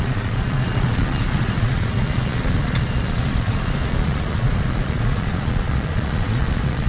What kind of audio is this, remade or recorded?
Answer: remade